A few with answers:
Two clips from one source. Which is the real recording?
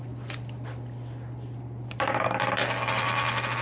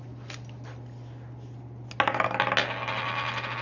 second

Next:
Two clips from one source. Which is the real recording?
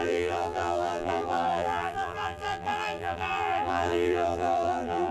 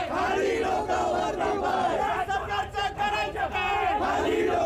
second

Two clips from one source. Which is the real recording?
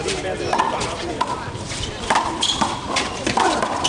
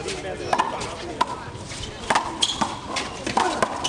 second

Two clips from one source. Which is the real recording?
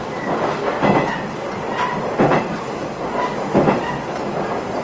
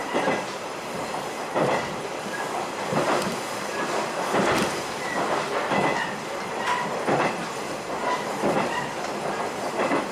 first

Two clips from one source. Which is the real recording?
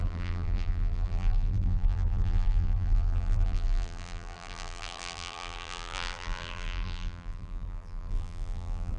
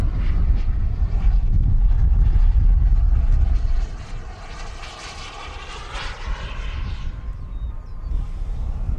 second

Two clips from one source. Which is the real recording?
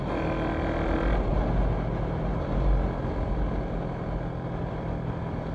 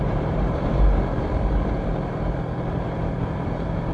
first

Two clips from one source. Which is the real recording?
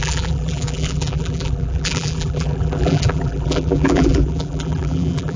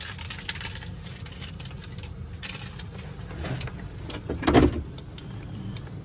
second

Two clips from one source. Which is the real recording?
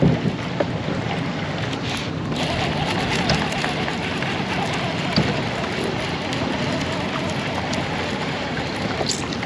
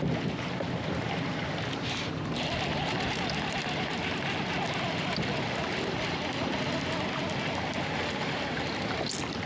second